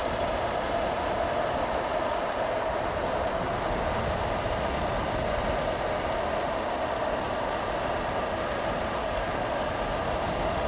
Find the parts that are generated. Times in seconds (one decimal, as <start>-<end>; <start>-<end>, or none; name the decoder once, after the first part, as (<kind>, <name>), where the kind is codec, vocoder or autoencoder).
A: 9.0-9.7 (codec, DAC)